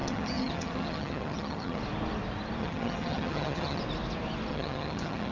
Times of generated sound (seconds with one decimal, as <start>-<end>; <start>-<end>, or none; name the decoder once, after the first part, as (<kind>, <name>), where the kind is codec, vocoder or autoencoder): 0.0-1.8 (vocoder, HiFi-GAN); 2.6-3.8; 4.5-5.3